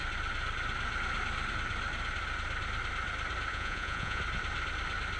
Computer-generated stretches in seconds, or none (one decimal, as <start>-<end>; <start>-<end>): 3.5-4.2